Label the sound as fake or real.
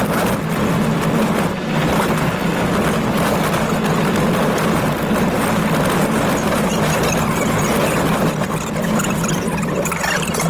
real